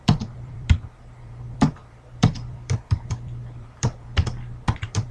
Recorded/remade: remade